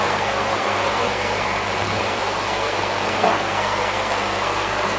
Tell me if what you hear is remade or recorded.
remade